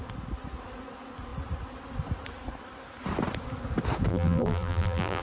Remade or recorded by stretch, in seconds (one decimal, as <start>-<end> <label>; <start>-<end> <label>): 0.0-4.1 recorded; 4.1-5.2 remade